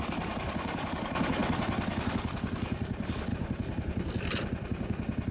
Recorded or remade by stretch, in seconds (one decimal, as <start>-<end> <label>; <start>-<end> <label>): 0.0-1.4 remade; 1.4-2.1 recorded; 2.1-3.3 remade; 3.3-5.3 recorded